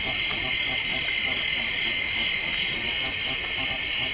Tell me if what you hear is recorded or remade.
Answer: recorded